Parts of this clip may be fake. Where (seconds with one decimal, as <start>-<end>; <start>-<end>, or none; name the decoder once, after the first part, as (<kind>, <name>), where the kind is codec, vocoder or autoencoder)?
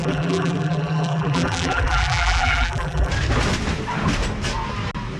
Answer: 0.0-3.1 (vocoder, BigVGAN v2)